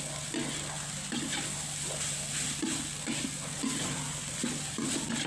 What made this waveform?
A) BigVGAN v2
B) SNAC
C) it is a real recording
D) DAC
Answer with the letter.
C